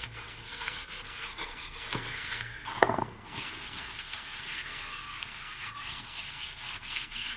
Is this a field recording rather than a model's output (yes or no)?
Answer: no